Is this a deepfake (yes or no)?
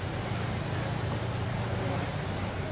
no